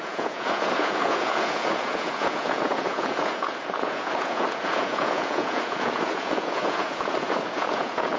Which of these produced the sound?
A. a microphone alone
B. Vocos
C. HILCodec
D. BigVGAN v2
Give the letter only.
B